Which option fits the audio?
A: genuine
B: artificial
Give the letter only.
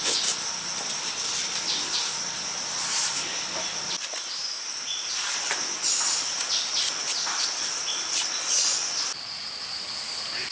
A